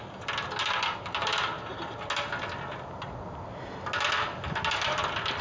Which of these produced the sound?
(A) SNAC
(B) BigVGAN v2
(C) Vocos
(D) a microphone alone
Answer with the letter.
D